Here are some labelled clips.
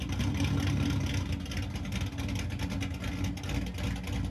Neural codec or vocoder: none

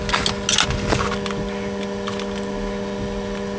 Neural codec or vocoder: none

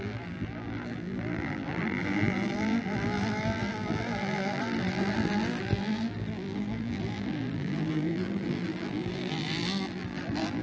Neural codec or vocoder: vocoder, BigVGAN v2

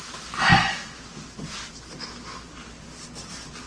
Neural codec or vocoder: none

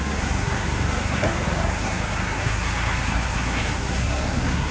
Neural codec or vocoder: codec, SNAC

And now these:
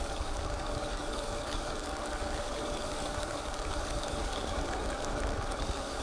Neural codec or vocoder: codec, DAC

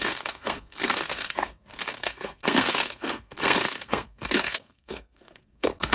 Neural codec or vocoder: codec, SNAC